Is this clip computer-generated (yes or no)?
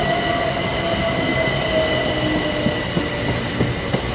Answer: no